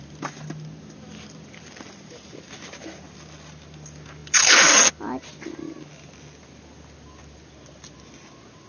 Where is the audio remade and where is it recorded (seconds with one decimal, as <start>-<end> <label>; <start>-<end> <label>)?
0.0-8.7 recorded